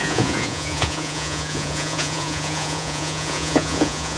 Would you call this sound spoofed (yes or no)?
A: yes